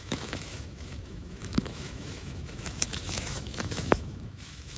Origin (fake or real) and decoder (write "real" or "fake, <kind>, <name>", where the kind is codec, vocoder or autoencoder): fake, autoencoder, DAC-VAE